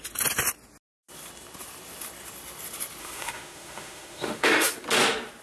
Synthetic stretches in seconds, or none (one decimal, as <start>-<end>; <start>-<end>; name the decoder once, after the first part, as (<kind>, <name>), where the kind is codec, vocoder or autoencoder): 3.0-4.7 (autoencoder, DAC-VAE)

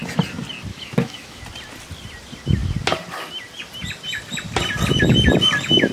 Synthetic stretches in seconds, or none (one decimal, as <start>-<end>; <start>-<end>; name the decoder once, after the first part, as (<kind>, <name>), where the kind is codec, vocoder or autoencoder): 0.7-1.4 (autoencoder, DAC-VAE)

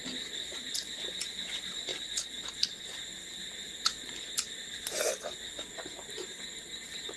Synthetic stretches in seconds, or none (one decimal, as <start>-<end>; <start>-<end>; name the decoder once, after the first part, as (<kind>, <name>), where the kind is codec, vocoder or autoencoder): none

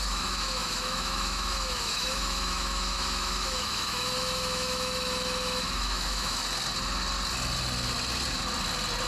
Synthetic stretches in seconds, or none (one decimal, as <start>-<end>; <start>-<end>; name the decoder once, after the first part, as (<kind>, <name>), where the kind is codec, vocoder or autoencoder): 0.0-6.4 (autoencoder, DAC-VAE)

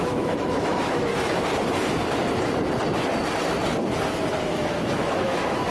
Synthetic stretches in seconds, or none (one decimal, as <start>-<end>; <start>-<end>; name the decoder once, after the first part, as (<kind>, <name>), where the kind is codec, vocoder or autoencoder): 0.0-1.1 (autoencoder, DAC-VAE); 4.5-5.7